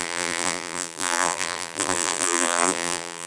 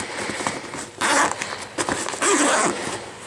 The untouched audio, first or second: second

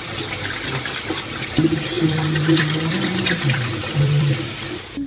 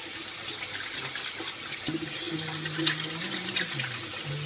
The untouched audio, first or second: second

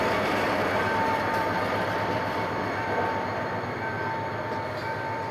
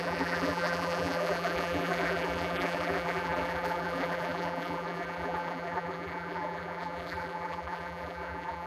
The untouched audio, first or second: first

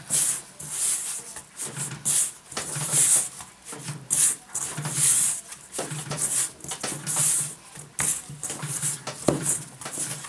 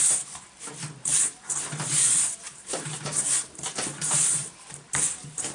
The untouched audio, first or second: first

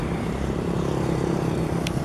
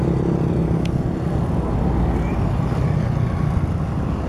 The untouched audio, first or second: second